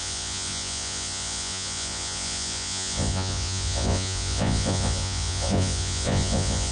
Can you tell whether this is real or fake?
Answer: fake